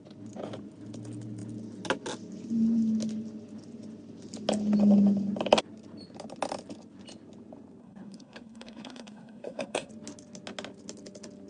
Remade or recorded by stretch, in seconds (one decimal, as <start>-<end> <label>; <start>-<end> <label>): 0.0-7.8 recorded; 7.8-9.9 remade; 9.9-11.5 recorded